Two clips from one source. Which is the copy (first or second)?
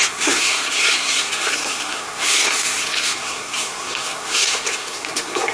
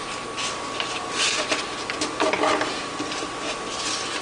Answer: first